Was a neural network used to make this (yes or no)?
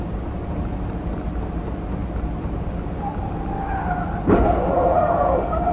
no